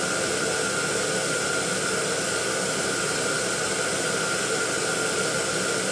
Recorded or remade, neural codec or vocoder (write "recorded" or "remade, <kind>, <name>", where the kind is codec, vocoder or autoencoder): recorded